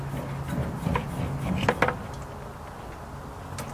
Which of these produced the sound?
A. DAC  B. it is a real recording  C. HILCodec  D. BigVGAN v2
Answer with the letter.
B